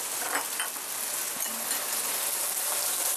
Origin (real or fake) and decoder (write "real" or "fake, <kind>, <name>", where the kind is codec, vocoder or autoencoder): real